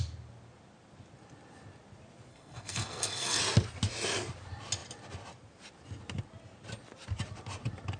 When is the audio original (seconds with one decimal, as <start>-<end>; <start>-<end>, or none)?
0.0-2.3; 3.4-8.0